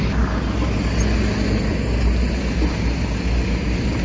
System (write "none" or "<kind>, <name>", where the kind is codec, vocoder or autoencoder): none